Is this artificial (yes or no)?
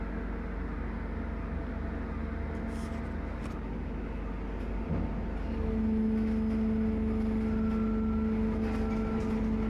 no